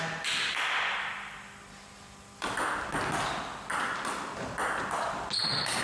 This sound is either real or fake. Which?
real